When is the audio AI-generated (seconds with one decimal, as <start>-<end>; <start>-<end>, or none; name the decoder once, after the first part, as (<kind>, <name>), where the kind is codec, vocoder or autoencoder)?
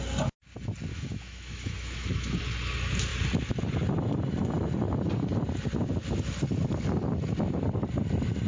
0.9-2.4 (autoencoder, DAC-VAE)